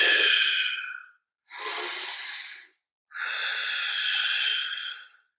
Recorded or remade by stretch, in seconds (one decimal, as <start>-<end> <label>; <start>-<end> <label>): 0.0-5.4 recorded